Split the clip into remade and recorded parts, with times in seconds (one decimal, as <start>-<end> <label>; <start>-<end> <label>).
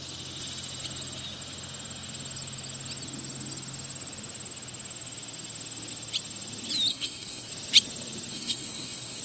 0.0-6.9 recorded; 6.9-7.5 remade; 7.5-8.3 recorded; 8.3-9.2 remade